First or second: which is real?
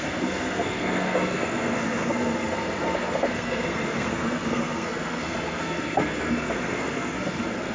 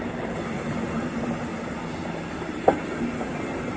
second